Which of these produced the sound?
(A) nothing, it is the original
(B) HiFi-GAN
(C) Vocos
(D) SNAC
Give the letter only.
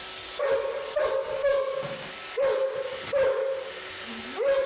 A